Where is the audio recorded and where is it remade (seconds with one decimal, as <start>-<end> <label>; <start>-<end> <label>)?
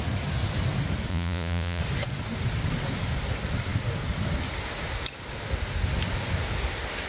0.0-1.1 recorded; 1.1-1.8 remade; 1.8-7.1 recorded